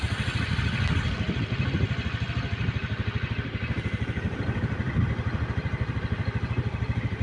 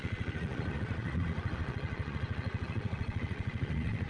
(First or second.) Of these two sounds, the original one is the first